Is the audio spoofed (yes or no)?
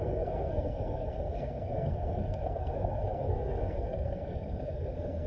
yes